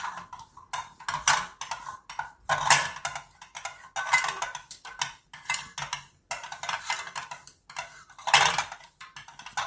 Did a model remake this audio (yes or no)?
no